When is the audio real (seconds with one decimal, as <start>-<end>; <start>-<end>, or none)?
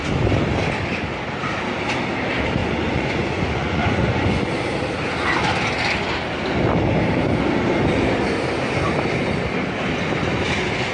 0.0-2.6; 4.5-10.9